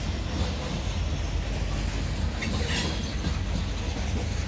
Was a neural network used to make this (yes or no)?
no